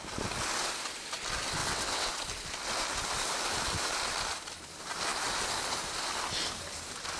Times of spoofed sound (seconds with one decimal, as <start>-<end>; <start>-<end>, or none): 1.6-2.1